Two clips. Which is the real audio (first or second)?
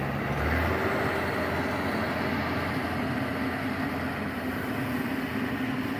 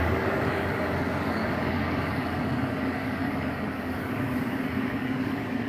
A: first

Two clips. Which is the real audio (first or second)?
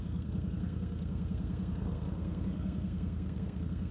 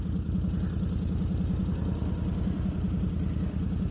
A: second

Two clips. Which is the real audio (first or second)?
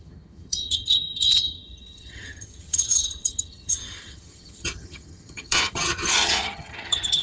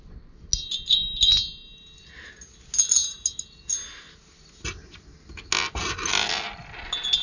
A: second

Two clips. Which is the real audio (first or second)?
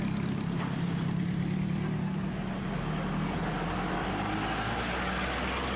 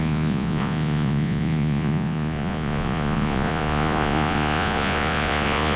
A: first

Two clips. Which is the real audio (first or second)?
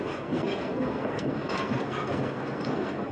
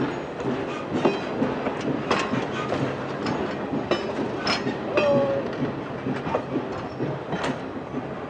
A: second